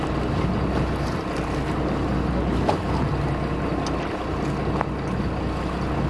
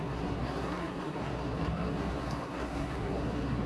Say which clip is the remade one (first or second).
second